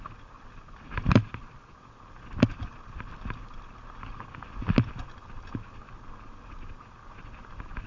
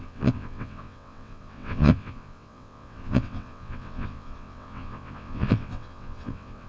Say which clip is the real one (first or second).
first